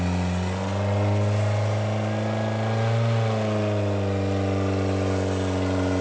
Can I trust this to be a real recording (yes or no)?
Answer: yes